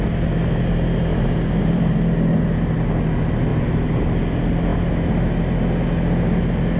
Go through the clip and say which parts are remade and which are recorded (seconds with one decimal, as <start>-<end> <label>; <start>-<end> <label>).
0.0-1.1 recorded; 1.1-1.9 remade; 1.9-3.5 recorded; 3.5-4.2 remade; 4.2-6.8 recorded